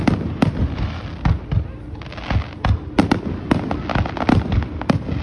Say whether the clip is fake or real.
real